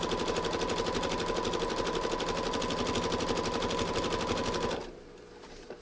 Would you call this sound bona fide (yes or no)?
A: yes